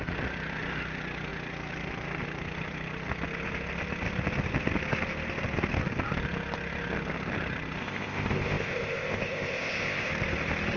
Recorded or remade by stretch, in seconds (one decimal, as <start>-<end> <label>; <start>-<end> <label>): 0.0-7.8 recorded; 7.8-10.1 remade; 10.1-10.8 recorded